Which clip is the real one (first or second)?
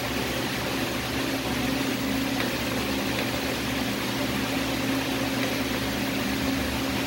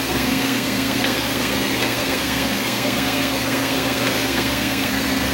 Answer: first